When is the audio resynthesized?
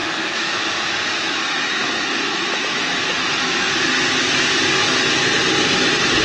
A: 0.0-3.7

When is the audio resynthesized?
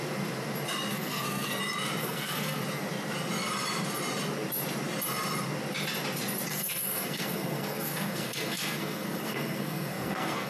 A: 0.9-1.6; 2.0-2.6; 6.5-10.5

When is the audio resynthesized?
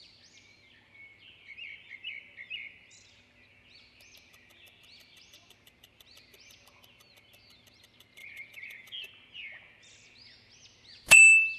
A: 8.2-9.1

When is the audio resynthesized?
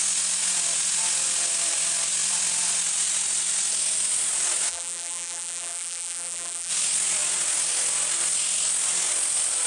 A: 4.7-6.7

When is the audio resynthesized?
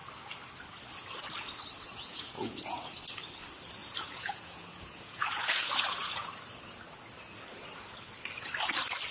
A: 1.9-2.8; 3.8-6.3